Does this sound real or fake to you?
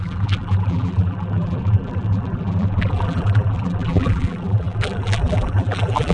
fake